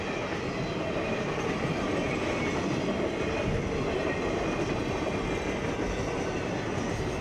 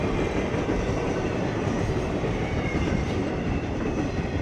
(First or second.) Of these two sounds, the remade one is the second